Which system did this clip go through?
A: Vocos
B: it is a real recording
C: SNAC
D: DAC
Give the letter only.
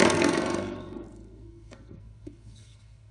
C